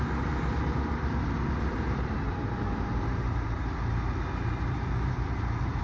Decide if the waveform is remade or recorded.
remade